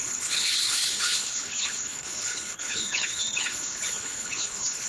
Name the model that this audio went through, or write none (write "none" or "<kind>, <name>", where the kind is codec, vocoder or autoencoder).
codec, HILCodec